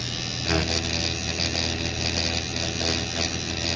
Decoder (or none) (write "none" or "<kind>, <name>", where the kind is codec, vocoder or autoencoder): none